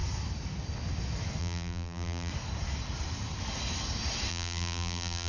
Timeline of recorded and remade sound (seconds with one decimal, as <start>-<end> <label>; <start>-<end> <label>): 0.0-1.4 recorded; 1.4-2.3 remade; 2.3-4.3 recorded; 4.3-5.3 remade